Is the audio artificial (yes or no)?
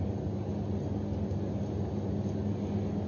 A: no